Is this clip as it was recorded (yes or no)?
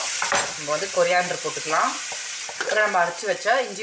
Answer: yes